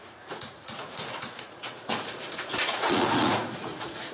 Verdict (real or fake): fake